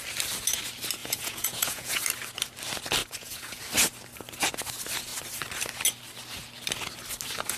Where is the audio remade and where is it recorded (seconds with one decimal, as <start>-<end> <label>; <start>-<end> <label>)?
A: 0.0-1.0 recorded; 1.0-2.0 remade; 2.0-3.0 recorded; 3.0-3.6 remade; 3.6-7.6 recorded